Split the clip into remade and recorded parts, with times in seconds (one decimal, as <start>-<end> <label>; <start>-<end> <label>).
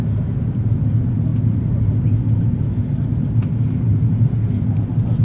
0.0-5.2 recorded